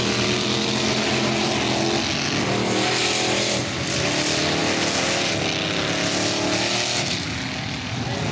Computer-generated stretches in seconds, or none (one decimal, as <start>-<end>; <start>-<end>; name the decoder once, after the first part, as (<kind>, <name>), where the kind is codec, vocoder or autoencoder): 3.0-3.6 (vocoder, BigVGAN v2)